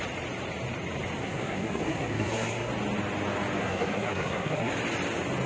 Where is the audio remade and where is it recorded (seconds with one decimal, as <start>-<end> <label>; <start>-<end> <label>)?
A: 0.0-1.2 recorded; 1.2-2.7 remade; 2.7-3.6 recorded; 3.6-4.7 remade; 4.7-5.5 recorded